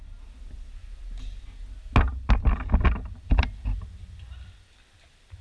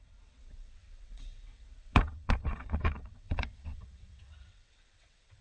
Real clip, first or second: first